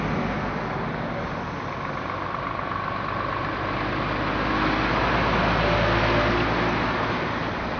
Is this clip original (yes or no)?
yes